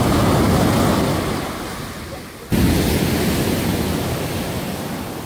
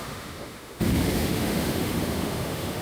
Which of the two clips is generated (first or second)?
second